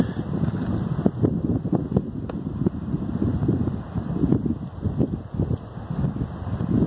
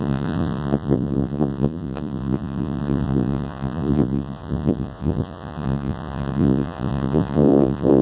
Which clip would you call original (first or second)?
first